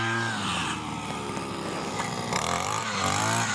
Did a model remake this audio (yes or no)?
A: yes